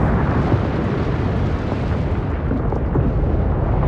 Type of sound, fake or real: real